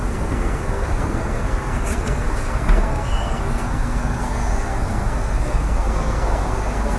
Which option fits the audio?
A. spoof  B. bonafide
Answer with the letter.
A